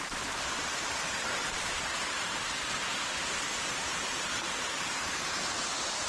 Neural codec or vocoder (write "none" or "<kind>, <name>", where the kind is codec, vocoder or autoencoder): vocoder, BigVGAN v2